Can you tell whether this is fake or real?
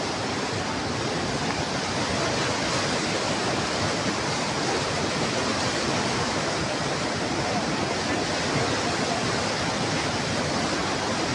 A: real